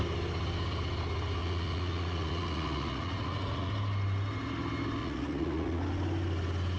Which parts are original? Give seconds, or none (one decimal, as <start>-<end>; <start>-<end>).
0.0-1.4; 3.7-5.0; 5.8-6.8